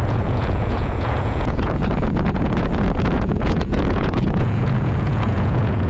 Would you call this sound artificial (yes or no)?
yes